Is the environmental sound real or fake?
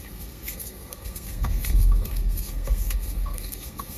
fake